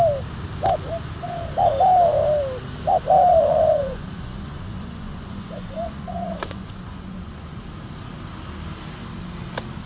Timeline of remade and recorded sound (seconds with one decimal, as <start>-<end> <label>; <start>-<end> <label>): 0.0-3.3 recorded; 3.3-7.6 remade; 7.6-9.9 recorded